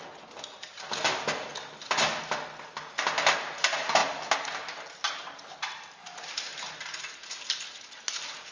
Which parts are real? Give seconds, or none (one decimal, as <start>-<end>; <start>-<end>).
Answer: 0.0-8.5